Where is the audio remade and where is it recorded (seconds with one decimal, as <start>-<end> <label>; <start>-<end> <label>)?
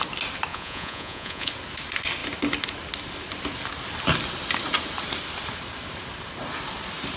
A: 0.0-0.5 recorded; 0.5-1.5 remade; 1.5-7.2 recorded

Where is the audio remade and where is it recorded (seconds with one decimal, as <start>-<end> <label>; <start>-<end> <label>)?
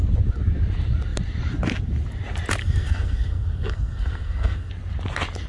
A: 0.0-2.6 recorded; 2.6-4.7 remade; 4.7-5.5 recorded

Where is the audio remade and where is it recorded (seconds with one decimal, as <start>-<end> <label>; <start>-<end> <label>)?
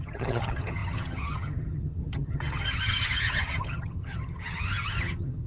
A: 0.0-5.5 remade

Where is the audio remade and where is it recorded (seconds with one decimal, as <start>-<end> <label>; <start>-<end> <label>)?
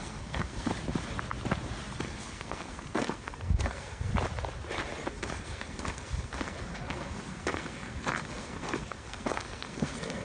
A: 0.0-0.7 remade; 0.7-2.0 recorded; 2.0-4.1 remade; 4.1-5.1 recorded; 5.1-10.2 remade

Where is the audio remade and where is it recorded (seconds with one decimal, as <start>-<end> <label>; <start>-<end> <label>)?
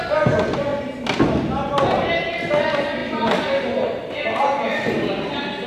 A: 0.0-5.7 recorded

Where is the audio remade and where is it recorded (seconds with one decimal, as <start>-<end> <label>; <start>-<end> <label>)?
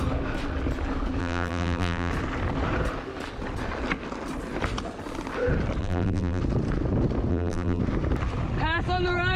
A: 0.0-1.2 recorded; 1.2-2.1 remade; 2.1-5.8 recorded; 5.8-6.4 remade; 6.4-7.3 recorded; 7.3-7.8 remade; 7.8-9.4 recorded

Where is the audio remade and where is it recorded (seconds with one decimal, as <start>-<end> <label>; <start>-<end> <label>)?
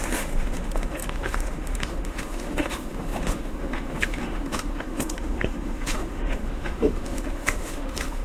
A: 0.0-8.2 remade